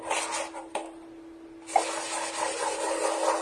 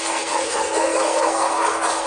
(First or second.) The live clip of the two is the first